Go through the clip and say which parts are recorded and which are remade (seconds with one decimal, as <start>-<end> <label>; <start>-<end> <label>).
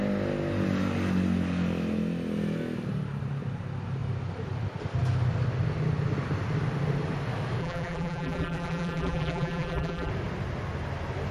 0.0-7.6 recorded; 7.6-10.1 remade; 10.1-11.3 recorded